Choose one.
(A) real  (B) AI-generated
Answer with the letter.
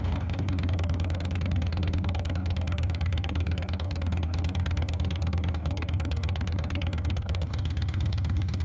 B